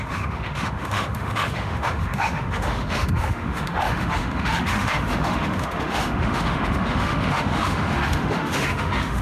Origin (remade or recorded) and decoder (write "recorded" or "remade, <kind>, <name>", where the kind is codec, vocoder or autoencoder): remade, autoencoder, DAC-VAE